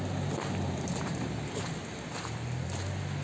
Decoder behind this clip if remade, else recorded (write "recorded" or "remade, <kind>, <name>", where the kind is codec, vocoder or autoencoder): recorded